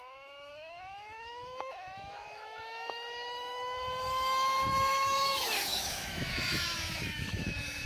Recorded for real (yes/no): no